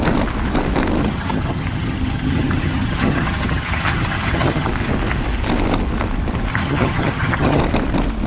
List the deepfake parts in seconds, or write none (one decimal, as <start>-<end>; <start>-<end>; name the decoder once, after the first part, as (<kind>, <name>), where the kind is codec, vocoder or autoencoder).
1.0-4.7 (vocoder, HiFi-GAN); 6.5-7.6